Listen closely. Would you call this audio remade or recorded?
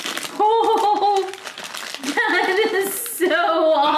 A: recorded